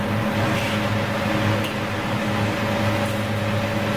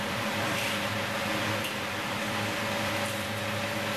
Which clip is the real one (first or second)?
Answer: first